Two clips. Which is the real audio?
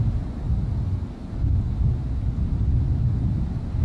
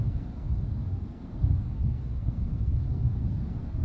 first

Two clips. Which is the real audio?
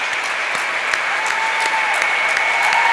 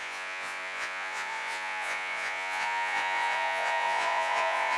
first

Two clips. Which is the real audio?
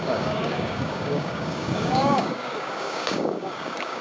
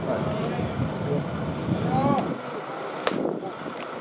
second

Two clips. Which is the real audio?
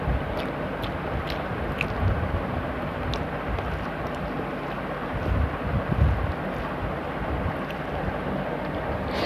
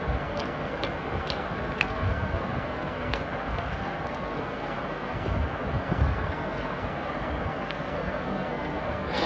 first